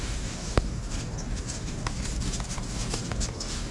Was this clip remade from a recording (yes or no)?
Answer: yes